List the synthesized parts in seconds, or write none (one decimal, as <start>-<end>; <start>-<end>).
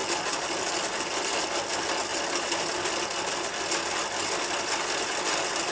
none